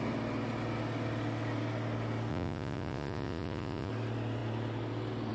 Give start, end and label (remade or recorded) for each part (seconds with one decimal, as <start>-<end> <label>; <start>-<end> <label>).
0.0-2.3 recorded; 2.3-3.9 remade; 3.9-5.3 recorded